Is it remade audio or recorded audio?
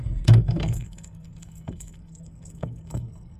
remade